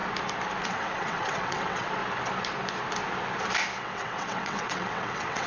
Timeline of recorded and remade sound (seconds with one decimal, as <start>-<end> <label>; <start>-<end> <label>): 0.0-0.6 recorded; 0.6-2.0 remade; 2.0-3.8 recorded; 3.8-5.5 remade